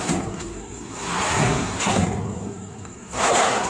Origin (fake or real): fake